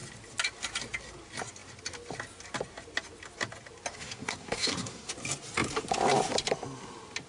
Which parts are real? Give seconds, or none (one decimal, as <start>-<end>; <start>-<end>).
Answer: 0.0-3.9; 5.1-7.3

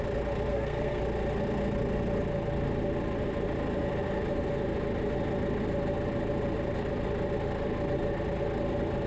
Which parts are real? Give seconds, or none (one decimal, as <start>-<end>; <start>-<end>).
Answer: 0.0-0.5; 1.0-9.1

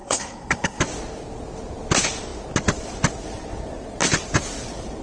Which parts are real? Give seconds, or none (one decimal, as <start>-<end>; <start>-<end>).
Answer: 0.8-5.0

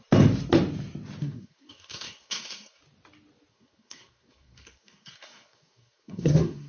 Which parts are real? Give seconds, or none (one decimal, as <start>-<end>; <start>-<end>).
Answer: 0.0-1.2; 2.8-3.5

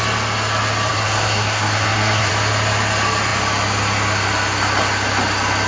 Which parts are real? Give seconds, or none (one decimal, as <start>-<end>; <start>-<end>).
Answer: 0.0-0.9; 2.3-5.7

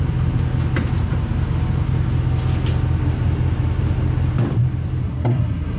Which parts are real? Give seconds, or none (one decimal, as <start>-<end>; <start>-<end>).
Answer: 0.0-5.0

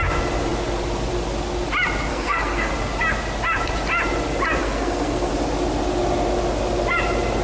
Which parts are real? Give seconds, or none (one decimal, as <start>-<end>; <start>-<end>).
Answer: 0.0-2.1; 2.7-4.6; 5.3-7.4